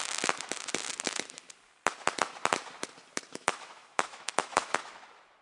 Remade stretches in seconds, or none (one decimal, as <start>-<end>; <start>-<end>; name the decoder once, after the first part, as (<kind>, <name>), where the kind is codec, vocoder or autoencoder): 3.3-4.7 (autoencoder, DAC-VAE)